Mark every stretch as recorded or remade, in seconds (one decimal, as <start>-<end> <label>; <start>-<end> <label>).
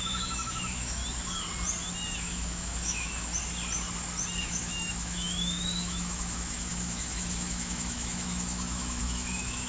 0.0-1.0 remade; 1.0-2.2 recorded; 2.2-3.3 remade; 3.3-4.4 recorded; 4.4-9.7 remade